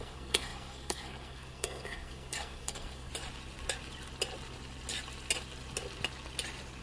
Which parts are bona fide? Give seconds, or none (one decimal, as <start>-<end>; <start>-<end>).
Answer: 3.1-6.8